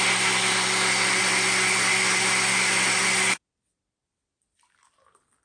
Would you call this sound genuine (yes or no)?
yes